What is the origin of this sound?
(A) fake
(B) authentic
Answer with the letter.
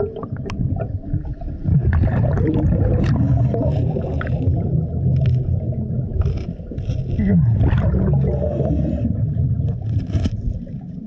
B